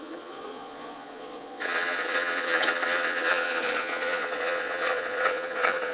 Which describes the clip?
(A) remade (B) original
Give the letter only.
A